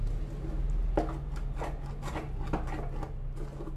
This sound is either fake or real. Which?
real